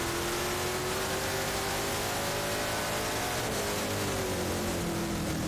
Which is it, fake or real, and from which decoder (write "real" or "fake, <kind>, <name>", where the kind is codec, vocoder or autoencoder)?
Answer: real